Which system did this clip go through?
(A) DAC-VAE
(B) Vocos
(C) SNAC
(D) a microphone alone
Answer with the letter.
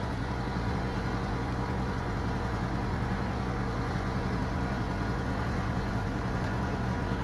B